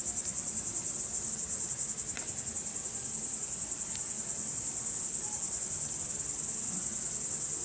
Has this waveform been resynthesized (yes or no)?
no